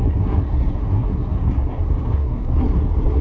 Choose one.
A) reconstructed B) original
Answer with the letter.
A